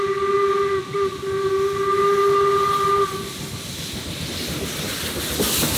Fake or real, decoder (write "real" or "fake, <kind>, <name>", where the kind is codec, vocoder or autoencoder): real